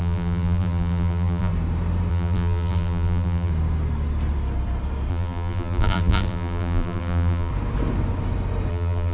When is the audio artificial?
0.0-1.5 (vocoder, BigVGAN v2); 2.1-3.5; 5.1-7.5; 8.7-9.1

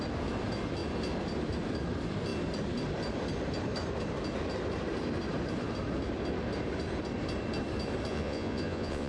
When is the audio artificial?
8.1-9.1 (vocoder, Vocos)

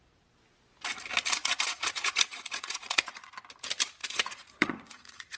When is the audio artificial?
1.4-3.4 (vocoder, Vocos); 4.0-5.4

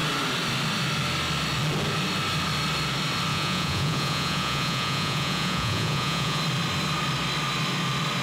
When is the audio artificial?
3.3-6.4 (vocoder, Vocos)

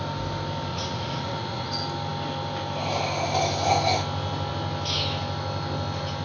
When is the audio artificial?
0.7-1.7 (vocoder, Vocos)

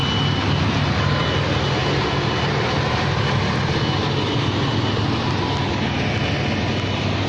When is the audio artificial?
none

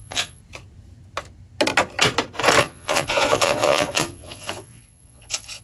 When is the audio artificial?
0.0-0.4 (vocoder, Vocos); 2.6-5.6

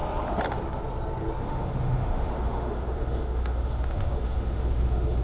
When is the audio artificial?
1.4-5.2 (autoencoder, DAC-VAE)